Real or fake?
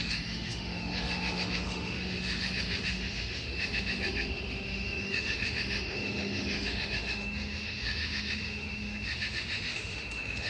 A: fake